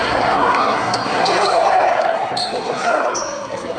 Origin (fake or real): fake